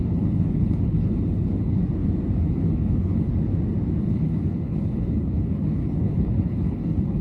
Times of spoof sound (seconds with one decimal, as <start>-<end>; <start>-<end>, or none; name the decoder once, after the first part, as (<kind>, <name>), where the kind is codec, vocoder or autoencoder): 0.0-1.8 (codec, HILCodec); 2.4-3.3; 4.0-7.2